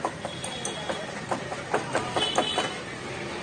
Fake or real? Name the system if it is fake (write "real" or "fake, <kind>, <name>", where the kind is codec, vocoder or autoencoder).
real